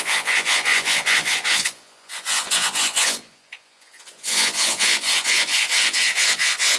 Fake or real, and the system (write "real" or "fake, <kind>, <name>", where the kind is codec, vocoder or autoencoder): fake, vocoder, Vocos